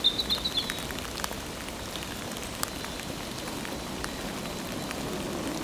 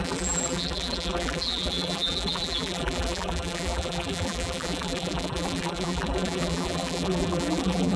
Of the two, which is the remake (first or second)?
second